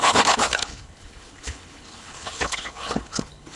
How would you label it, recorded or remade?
remade